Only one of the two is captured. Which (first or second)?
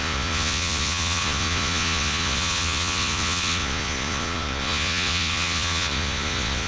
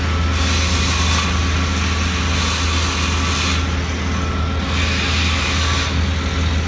second